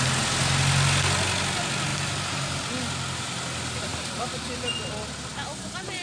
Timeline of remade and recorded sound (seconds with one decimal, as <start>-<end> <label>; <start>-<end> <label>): 0.0-1.9 recorded; 1.9-2.6 remade; 2.6-3.9 recorded; 3.9-4.4 remade; 4.4-6.0 recorded